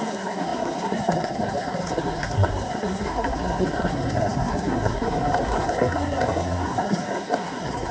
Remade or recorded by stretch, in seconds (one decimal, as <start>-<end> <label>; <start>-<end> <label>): 0.0-7.9 remade